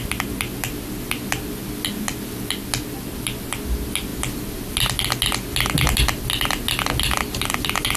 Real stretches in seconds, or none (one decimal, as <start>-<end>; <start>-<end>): 0.0-8.0